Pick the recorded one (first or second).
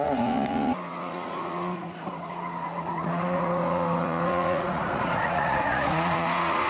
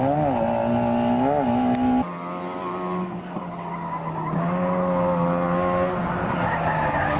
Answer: second